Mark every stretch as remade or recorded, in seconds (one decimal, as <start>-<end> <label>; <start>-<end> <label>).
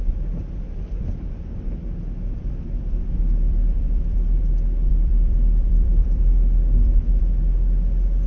0.0-0.4 recorded; 0.4-4.4 remade; 4.4-4.9 recorded; 4.9-7.2 remade; 7.2-8.3 recorded